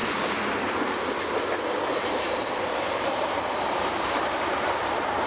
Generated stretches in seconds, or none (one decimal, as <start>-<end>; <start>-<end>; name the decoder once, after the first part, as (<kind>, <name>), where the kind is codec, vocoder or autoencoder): 2.0-5.3 (vocoder, BigVGAN v2)